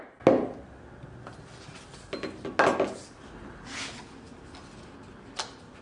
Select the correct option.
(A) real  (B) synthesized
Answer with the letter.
A